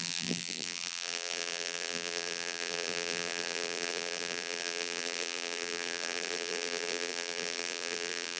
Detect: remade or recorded remade